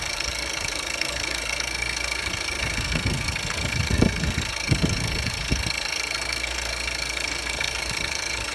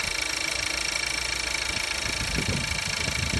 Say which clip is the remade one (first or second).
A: first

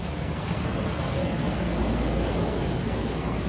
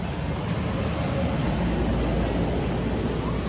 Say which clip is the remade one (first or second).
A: first